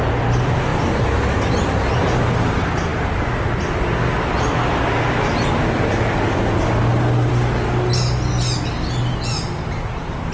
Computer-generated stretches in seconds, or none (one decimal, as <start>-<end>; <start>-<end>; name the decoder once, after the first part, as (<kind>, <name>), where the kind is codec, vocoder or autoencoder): none